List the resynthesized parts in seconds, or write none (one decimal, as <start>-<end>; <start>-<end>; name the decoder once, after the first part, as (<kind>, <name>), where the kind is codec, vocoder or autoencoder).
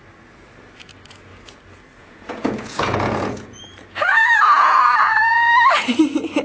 2.0-5.8 (vocoder, Vocos)